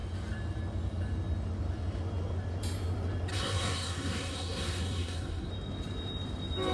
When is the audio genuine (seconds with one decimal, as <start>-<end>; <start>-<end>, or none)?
0.0-3.3; 5.5-6.7